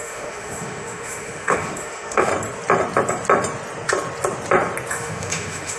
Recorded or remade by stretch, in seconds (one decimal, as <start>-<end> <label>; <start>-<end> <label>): 0.0-2.3 remade; 2.3-4.9 recorded; 4.9-5.8 remade